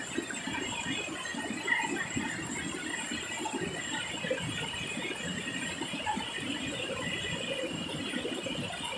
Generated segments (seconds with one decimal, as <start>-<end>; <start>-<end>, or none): 5.3-7.4